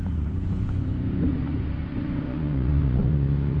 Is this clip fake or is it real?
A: fake